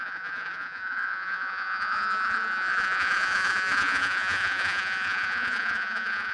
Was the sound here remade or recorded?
remade